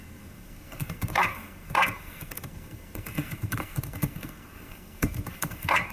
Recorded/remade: remade